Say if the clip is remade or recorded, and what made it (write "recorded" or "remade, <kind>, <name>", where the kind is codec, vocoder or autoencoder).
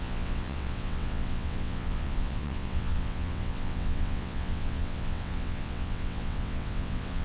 remade, vocoder, WaveNeXt